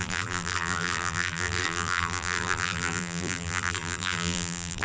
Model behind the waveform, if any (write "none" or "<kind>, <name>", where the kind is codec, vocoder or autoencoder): vocoder, BigVGAN v2